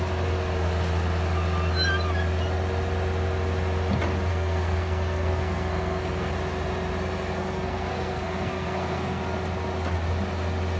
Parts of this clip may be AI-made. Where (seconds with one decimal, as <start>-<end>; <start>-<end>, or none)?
4.3-6.3; 7.4-9.2